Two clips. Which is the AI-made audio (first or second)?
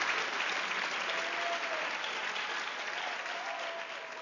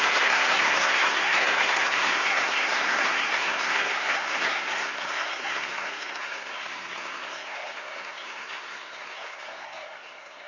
second